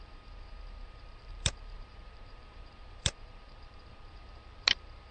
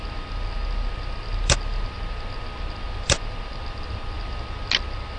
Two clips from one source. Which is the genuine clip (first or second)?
second